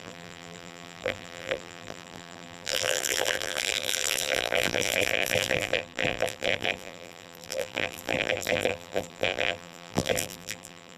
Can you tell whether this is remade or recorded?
remade